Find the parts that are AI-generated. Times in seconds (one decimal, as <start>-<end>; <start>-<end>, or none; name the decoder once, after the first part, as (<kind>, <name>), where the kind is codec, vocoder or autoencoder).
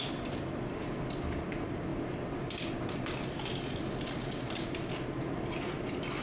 none